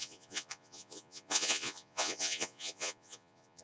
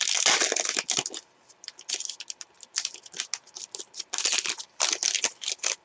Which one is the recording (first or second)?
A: second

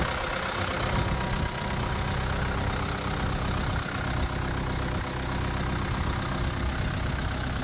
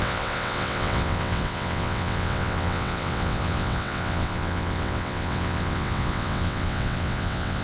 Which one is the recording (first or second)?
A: first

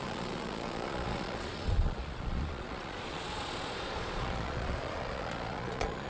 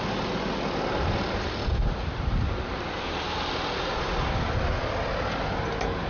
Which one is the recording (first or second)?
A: second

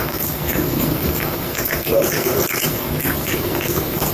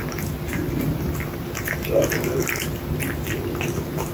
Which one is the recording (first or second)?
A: second